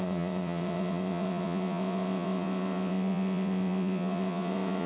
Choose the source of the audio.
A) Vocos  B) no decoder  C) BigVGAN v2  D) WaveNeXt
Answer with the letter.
D